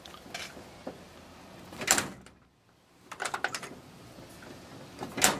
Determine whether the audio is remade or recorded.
recorded